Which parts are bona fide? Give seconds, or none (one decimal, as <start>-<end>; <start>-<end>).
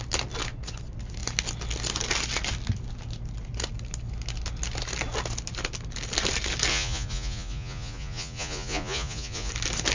0.0-6.7; 9.5-9.9